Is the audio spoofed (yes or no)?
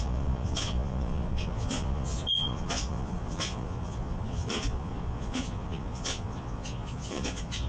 yes